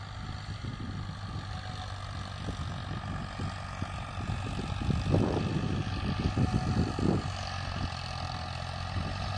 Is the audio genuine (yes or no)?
yes